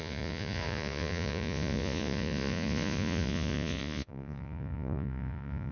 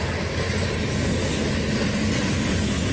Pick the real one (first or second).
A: second